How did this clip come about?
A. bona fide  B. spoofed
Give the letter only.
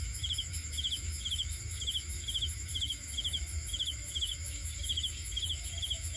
B